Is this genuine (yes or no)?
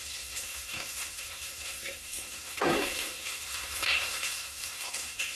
no